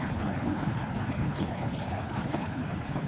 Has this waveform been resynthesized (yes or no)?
yes